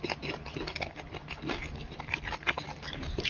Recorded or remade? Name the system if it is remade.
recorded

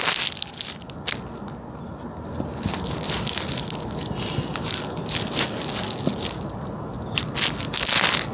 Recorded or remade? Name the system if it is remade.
recorded